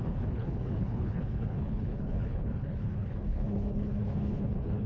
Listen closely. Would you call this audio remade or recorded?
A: remade